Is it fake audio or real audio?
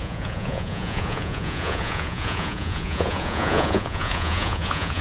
fake